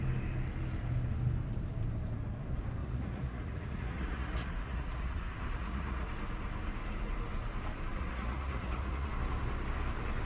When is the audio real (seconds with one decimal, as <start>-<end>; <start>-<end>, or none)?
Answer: 0.0-2.8; 6.1-7.9; 9.1-10.3